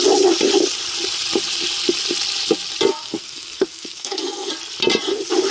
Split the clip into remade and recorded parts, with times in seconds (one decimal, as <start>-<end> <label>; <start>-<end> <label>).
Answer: 0.0-2.9 recorded; 2.9-4.5 remade; 4.5-5.5 recorded